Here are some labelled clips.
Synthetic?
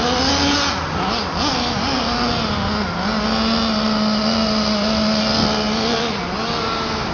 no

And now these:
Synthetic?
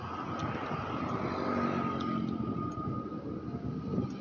no